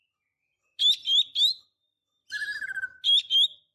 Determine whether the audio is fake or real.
real